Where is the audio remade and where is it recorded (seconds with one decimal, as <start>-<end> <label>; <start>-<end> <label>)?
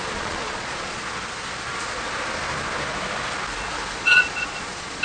0.0-1.0 remade; 1.0-4.0 recorded; 4.0-5.0 remade